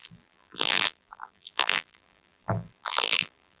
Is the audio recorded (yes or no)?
no